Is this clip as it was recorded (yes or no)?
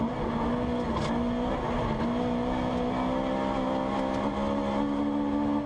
yes